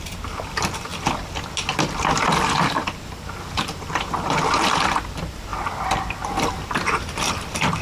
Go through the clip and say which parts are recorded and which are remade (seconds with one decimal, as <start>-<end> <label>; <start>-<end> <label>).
0.0-7.8 remade